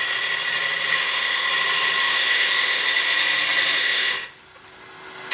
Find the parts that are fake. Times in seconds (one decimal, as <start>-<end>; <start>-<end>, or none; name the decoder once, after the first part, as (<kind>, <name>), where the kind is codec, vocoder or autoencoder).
1.0-1.5 (codec, ZipCodec); 2.0-2.8; 3.8-4.3